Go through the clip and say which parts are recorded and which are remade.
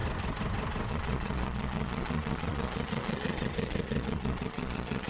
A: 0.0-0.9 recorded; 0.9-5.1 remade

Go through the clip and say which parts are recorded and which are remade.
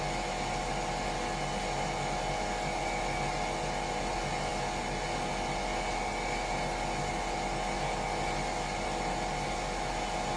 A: 0.0-10.4 recorded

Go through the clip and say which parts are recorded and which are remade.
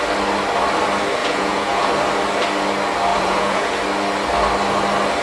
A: 0.0-1.2 recorded; 1.2-1.9 remade; 1.9-3.1 recorded; 3.1-3.8 remade; 3.8-5.2 recorded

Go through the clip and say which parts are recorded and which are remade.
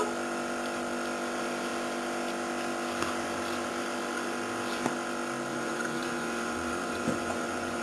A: 0.0-5.5 recorded; 5.5-7.8 remade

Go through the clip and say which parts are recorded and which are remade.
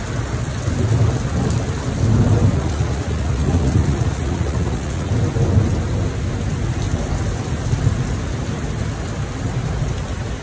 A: 0.0-2.5 recorded; 2.5-5.1 remade; 5.1-10.4 recorded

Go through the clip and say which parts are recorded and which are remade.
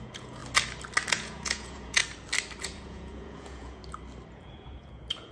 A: 0.0-0.4 remade; 0.4-1.1 recorded; 1.1-2.0 remade; 2.0-2.6 recorded; 2.6-3.8 remade; 3.8-4.3 recorded; 4.3-5.3 remade